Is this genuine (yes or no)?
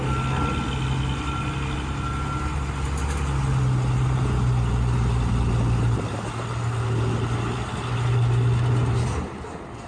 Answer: yes